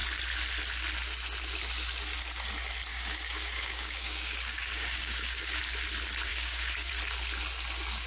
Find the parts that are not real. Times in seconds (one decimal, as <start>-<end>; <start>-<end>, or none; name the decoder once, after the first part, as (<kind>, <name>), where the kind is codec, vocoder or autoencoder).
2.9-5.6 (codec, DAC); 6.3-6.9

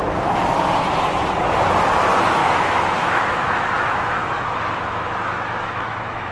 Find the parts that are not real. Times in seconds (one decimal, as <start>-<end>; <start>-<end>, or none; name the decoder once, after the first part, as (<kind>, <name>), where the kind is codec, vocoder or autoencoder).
2.4-6.3 (autoencoder, DAC-VAE)

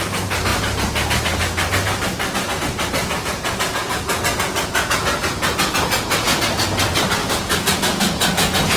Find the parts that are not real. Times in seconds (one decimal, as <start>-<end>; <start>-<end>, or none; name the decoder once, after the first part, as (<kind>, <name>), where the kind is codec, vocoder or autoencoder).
3.0-6.4 (vocoder, Vocos); 7.2-8.8

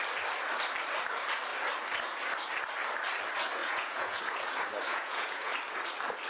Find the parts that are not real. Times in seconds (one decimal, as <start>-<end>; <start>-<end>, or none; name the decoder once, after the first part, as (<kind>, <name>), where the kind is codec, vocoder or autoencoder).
3.6-4.2 (vocoder, Vocos); 4.9-5.5

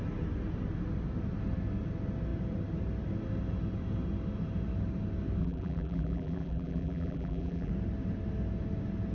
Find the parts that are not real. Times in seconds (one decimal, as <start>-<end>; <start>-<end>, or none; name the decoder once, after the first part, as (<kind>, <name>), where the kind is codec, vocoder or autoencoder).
5.4-7.7 (vocoder, BigVGAN v2)